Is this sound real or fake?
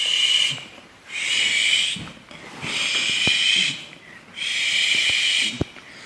real